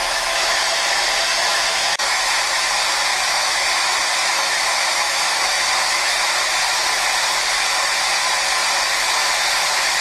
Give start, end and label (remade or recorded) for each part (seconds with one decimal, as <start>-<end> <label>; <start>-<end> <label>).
0.0-0.6 remade; 0.6-1.3 recorded; 1.3-2.3 remade; 2.3-3.1 recorded; 3.1-6.5 remade; 6.5-10.0 recorded